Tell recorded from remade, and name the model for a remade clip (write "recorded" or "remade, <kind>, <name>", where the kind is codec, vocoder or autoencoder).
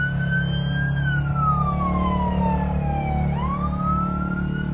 recorded